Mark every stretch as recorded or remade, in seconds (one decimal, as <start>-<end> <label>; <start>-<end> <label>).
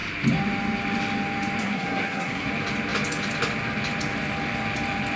0.0-1.6 recorded; 1.6-2.5 remade; 2.5-5.2 recorded